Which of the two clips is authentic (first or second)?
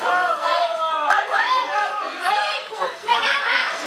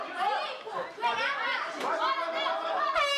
second